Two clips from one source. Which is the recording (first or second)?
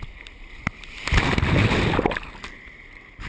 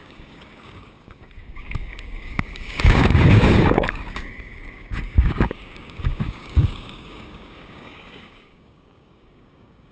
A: first